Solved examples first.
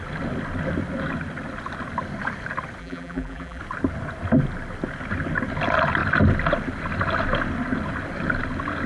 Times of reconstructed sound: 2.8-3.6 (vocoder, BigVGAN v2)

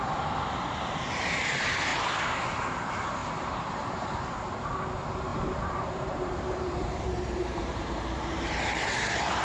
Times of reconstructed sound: 3.2-4.2 (vocoder, BigVGAN v2); 5.3-9.4

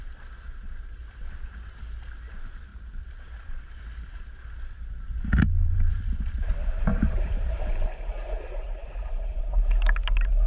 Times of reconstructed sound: 2.7-3.2 (vocoder, BigVGAN v2); 5.6-6.5; 6.9-9.4

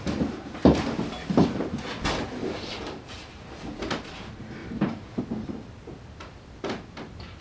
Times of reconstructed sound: 2.4-3.4 (vocoder, BigVGAN v2); 4.6-5.2

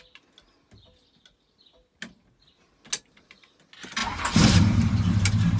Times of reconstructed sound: 4.0-5.6 (vocoder, BigVGAN v2)

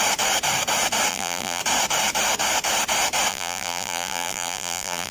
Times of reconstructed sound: 1.1-1.6 (vocoder, BigVGAN v2); 3.3-5.1